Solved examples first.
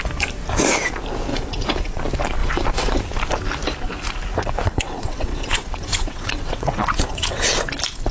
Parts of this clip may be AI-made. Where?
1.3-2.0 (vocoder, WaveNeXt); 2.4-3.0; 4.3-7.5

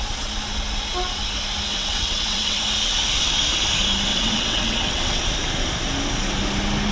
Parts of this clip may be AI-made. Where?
1.7-2.6 (vocoder, WaveNeXt); 4.1-5.2

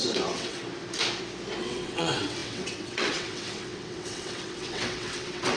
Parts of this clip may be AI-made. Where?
0.0-0.6 (vocoder, WaveNeXt); 1.6-5.6